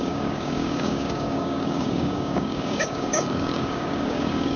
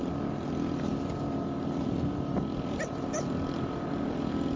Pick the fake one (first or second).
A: first